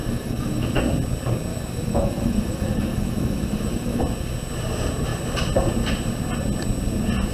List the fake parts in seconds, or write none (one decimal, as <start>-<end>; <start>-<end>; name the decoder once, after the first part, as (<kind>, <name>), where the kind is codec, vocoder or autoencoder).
0.0-0.8 (autoencoder, DAC-VAE); 1.5-4.0